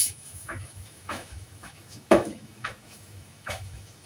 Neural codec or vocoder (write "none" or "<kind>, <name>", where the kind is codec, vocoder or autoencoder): autoencoder, DAC-VAE